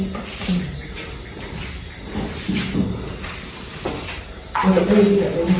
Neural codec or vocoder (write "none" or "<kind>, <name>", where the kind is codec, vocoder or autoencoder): none